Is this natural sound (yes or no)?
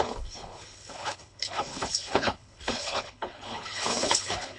no